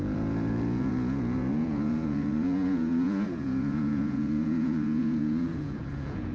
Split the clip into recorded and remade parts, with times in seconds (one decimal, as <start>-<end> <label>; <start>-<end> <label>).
0.0-6.3 remade